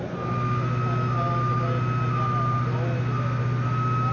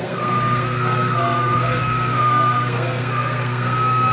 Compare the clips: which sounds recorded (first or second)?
first